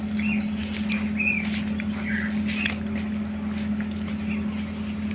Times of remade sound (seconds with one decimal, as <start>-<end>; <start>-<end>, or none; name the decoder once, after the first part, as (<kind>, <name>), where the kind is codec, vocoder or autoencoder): none